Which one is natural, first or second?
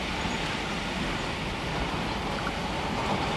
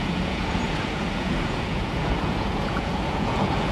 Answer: first